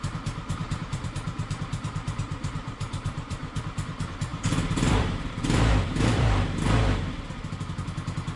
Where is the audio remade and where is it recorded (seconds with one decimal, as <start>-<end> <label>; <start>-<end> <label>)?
0.0-0.6 recorded; 0.6-3.6 remade; 3.6-4.3 recorded; 4.3-6.6 remade; 6.6-8.4 recorded